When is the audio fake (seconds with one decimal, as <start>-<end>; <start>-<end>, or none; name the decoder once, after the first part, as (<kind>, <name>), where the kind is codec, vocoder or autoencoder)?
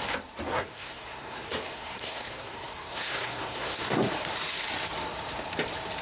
0.5-4.1 (codec, SNAC)